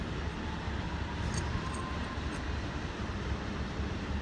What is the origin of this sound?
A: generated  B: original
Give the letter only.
B